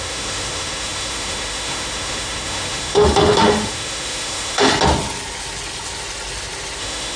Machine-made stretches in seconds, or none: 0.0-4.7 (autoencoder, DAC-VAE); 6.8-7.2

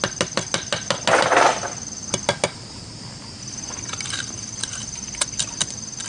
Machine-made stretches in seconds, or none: none